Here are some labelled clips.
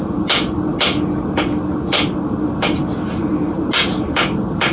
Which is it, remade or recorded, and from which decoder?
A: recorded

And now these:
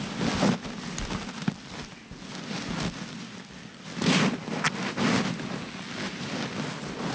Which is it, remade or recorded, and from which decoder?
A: recorded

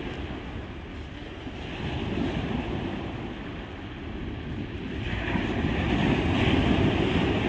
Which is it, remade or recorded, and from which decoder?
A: recorded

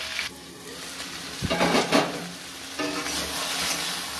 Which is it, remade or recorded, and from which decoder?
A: recorded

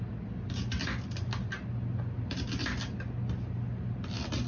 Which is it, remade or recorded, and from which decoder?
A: recorded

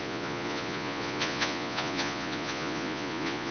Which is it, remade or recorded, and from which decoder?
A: remade, vocoder, Vocos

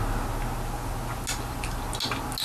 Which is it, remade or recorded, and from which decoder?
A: recorded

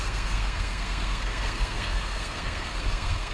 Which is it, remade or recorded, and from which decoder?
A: remade, codec, SNAC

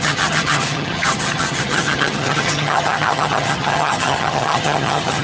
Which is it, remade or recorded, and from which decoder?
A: remade, vocoder, HiFi-GAN